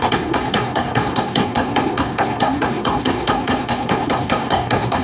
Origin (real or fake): fake